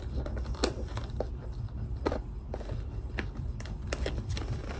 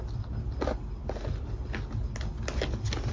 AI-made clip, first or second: first